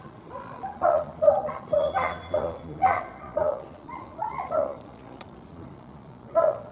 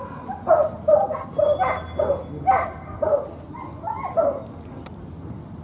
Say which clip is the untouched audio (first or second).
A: second